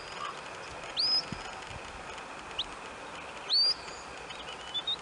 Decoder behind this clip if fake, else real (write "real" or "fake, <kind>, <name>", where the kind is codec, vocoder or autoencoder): real